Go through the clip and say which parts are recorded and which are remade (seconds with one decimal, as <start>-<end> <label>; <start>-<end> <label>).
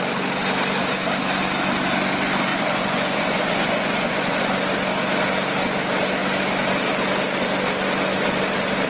0.0-2.5 recorded; 2.5-4.5 remade; 4.5-8.9 recorded